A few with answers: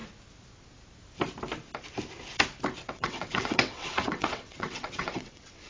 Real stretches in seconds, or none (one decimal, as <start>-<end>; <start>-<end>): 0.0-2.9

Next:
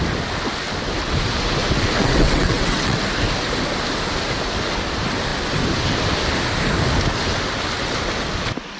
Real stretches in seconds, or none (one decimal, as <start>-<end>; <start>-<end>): 0.0-2.0; 3.0-8.8

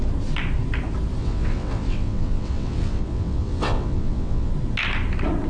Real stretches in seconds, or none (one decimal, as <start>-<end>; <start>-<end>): 0.0-1.2; 4.5-5.5

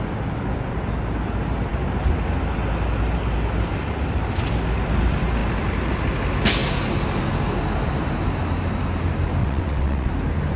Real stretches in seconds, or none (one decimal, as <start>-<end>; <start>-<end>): 0.0-9.4; 10.1-10.6

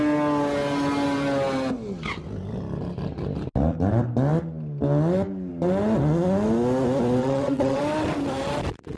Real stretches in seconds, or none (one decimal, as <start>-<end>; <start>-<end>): 0.0-7.2; 7.8-9.0